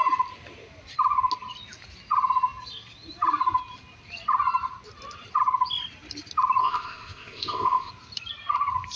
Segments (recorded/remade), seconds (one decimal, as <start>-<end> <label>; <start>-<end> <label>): 0.0-6.6 recorded; 6.6-7.9 remade; 7.9-9.0 recorded